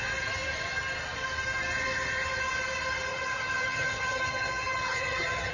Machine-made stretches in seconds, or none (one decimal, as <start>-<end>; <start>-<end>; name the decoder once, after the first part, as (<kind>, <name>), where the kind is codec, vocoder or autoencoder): 3.1-5.5 (vocoder, HiFi-GAN)